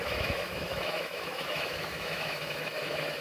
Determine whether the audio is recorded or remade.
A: remade